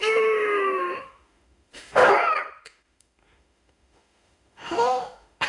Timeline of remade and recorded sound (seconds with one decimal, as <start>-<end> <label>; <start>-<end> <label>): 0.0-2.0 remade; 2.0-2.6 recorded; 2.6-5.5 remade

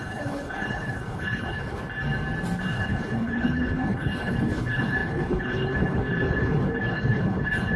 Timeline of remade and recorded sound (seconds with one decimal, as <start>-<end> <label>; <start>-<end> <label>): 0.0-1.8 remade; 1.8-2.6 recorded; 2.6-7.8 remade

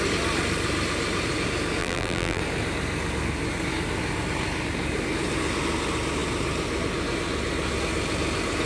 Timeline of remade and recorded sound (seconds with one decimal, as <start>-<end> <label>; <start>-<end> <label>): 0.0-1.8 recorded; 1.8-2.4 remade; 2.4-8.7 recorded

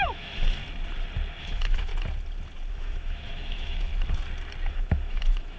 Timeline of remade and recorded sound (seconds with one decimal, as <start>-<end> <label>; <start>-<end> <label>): 0.0-0.6 remade; 0.6-1.4 recorded; 1.4-1.9 remade; 1.9-2.7 recorded; 2.7-3.9 remade; 3.9-4.7 recorded; 4.7-5.6 remade

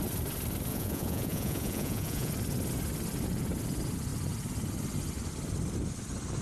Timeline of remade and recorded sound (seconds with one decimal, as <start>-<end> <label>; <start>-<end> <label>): 0.0-0.7 recorded; 0.7-2.3 remade; 2.3-6.4 recorded

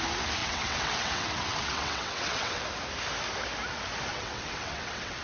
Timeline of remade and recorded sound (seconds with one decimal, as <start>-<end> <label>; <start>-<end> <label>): 0.0-0.4 recorded; 0.4-2.6 remade; 2.6-4.1 recorded; 4.1-5.2 remade

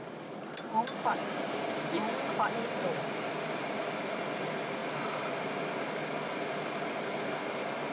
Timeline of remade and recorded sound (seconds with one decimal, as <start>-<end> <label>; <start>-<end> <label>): 0.0-7.9 recorded